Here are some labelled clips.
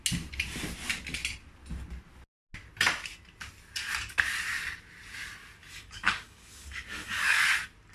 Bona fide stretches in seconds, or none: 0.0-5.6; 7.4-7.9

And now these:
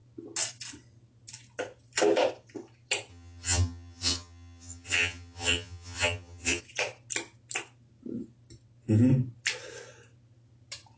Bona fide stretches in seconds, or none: 0.0-3.1; 6.6-11.0

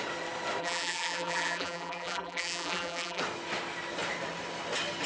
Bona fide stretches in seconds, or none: 0.0-0.6; 3.2-5.1

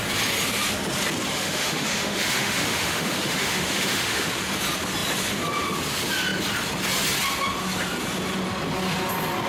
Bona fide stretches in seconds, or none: 0.0-1.3; 4.3-9.5

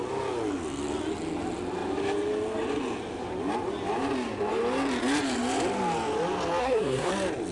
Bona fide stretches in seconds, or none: 0.0-6.6; 7.1-7.5

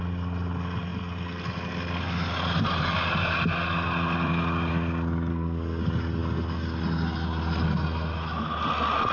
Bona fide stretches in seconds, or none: 0.0-5.3; 5.8-9.1

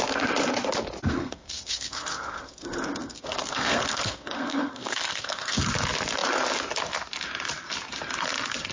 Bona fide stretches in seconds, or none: 0.0-1.1; 5.6-8.7